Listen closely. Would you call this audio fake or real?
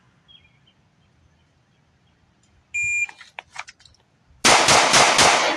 real